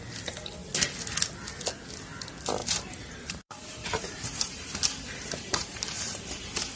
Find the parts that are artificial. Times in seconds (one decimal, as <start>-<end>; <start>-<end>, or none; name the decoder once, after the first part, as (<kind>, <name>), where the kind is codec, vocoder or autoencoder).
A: 2.6-6.8 (vocoder, BigVGAN v2)